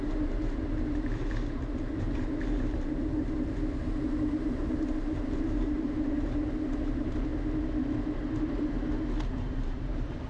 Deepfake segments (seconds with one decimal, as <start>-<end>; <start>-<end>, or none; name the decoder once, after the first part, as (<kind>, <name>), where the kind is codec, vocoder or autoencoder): 0.0-7.3 (vocoder, BigVGAN v2); 9.3-10.3